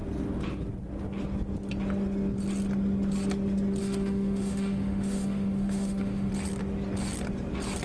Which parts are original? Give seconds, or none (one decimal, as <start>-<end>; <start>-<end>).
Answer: 0.0-3.8; 6.3-7.8